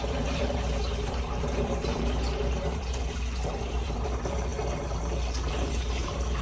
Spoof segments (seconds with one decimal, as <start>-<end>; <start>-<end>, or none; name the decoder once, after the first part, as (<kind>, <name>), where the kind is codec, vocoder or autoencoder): 0.0-6.4 (vocoder, BigVGAN v2)